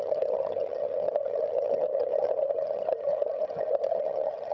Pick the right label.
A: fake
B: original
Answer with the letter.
A